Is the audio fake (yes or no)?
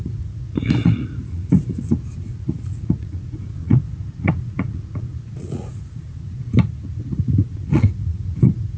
yes